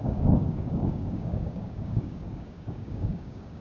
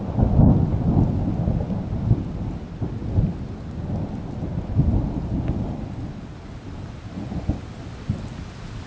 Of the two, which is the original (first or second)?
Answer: second